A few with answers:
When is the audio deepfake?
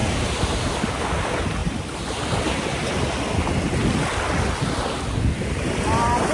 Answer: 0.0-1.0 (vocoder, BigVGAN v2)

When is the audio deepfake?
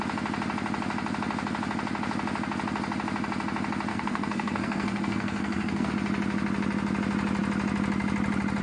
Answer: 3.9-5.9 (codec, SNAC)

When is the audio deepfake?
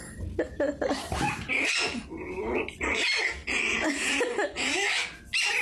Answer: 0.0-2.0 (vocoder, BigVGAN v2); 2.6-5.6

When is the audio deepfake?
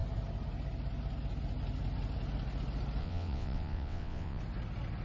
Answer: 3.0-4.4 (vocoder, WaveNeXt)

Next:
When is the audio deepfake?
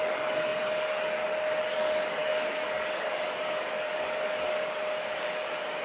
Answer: 0.0-5.8 (codec, DAC)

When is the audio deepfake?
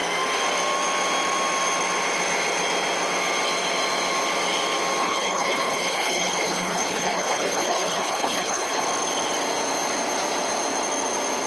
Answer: 5.0-8.8 (codec, HILCodec)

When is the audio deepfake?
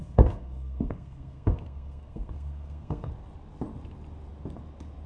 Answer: 0.0-3.1 (codec, SNAC)